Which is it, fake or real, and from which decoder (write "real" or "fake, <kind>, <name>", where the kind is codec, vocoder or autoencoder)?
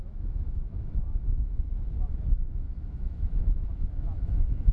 fake, autoencoder, DAC-VAE